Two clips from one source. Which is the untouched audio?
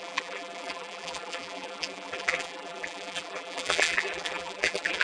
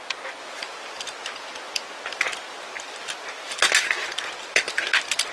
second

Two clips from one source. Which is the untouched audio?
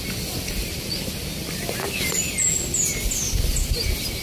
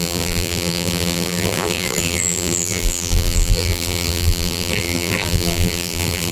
first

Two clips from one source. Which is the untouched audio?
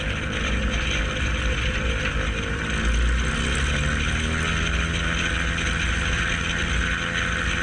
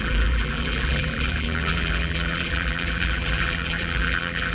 first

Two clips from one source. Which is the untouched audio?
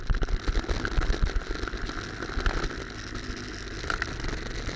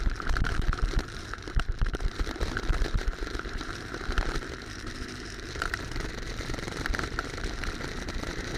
first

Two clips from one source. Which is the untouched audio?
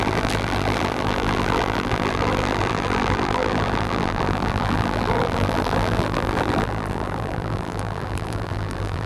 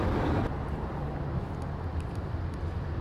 second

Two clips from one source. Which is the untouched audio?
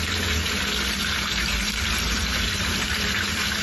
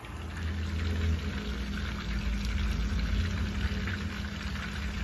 second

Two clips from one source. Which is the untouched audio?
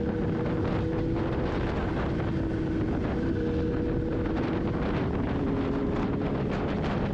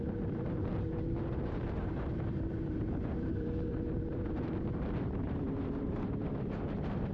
first